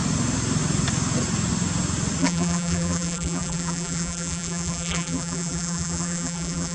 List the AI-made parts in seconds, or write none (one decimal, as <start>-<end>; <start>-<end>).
2.2-6.7